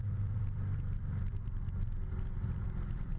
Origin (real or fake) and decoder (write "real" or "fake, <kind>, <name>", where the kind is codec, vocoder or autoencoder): fake, vocoder, BigVGAN v2